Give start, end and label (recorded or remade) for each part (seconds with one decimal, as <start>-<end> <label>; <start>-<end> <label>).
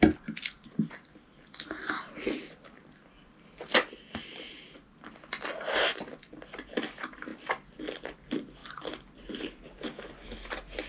0.0-10.9 recorded